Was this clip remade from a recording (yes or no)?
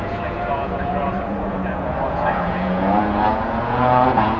yes